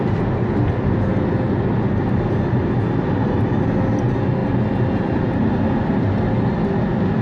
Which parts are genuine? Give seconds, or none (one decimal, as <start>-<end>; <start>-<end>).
0.0-7.2